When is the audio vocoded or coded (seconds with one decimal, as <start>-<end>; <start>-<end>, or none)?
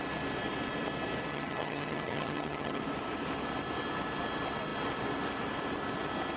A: 1.3-2.8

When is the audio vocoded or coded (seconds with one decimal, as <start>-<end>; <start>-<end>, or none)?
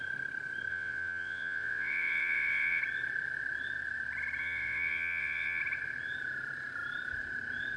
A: 0.7-2.8; 4.4-5.6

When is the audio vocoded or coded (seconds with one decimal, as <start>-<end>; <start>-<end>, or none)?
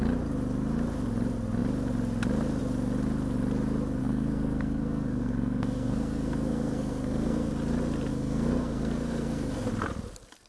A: 4.0-7.5; 8.1-9.7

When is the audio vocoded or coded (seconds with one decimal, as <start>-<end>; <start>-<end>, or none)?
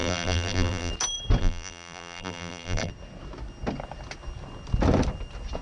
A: 0.0-0.9; 1.4-2.9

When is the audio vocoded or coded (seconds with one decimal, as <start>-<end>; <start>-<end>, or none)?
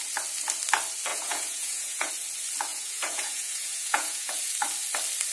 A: 1.1-2.1; 2.7-4.4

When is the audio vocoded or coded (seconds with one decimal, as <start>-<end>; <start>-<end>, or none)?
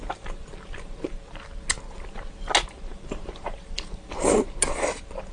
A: 0.0-1.1; 2.9-4.1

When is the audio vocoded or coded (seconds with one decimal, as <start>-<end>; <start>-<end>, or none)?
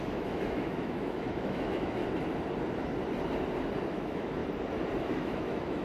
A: 0.0-2.0; 3.9-4.4; 5.0-5.8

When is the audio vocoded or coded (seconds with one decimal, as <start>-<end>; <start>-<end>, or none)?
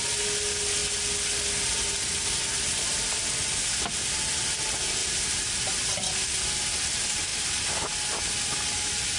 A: 5.0-6.6